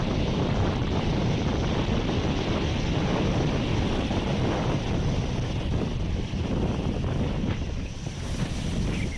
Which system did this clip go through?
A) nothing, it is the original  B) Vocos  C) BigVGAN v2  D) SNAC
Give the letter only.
A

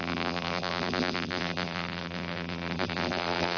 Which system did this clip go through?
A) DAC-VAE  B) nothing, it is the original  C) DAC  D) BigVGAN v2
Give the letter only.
D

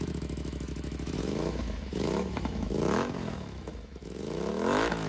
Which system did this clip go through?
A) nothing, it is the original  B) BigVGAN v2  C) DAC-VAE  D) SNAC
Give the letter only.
C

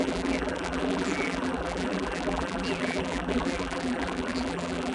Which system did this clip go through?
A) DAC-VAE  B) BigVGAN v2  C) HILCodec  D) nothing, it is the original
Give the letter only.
B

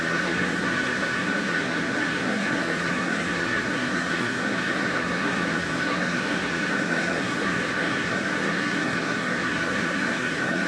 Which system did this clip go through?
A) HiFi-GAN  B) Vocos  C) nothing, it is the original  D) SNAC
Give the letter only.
D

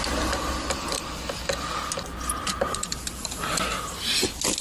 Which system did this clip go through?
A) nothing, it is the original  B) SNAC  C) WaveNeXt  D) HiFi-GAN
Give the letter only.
A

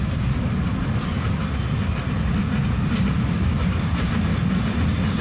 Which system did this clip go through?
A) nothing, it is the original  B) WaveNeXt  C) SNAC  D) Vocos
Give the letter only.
A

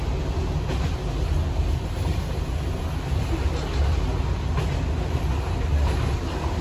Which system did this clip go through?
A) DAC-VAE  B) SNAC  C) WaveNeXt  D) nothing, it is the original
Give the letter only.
D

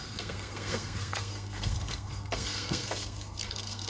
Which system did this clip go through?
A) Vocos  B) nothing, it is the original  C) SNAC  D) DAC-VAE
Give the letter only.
C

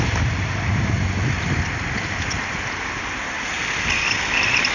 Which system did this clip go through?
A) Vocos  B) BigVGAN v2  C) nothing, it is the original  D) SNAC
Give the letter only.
C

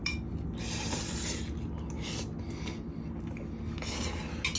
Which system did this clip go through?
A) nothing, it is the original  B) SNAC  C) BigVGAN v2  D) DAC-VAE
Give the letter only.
A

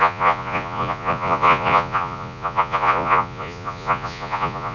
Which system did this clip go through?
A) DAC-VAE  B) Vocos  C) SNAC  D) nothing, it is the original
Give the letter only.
B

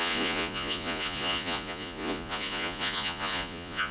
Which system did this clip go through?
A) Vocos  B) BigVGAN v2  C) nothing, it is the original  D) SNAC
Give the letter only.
A